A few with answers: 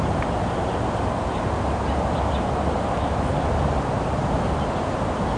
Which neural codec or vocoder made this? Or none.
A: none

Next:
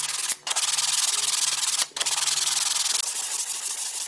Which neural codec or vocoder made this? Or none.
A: none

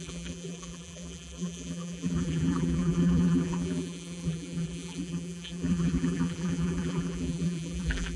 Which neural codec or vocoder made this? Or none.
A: vocoder, BigVGAN v2